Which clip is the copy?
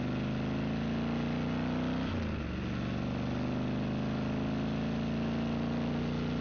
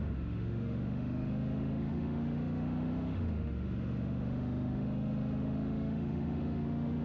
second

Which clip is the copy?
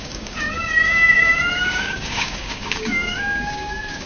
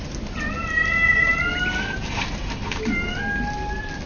first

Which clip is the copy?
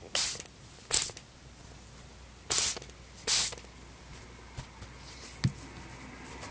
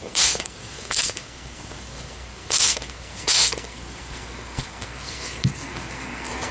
second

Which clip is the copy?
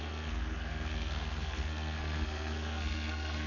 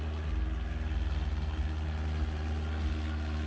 first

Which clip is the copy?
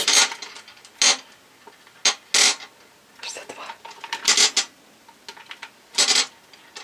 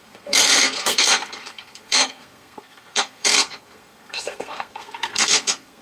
second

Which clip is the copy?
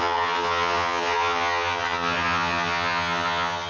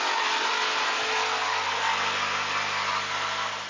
first